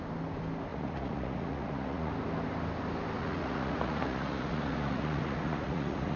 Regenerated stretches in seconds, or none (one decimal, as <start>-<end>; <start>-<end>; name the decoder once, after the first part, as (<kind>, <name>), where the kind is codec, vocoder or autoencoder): 0.7-2.1 (vocoder, Vocos); 3.2-6.2